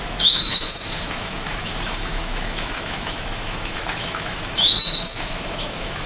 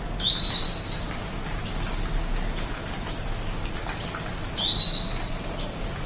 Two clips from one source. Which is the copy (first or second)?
first